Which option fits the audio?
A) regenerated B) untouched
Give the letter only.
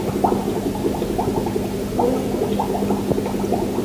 B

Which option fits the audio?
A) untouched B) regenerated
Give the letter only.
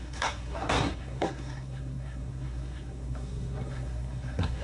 B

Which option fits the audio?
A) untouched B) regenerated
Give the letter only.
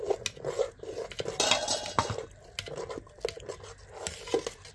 A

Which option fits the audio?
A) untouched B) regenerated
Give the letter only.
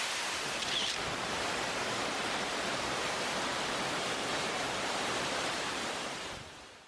B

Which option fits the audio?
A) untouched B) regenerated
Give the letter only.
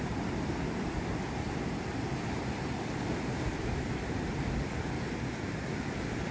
A